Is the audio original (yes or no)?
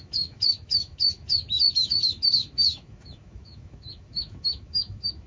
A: no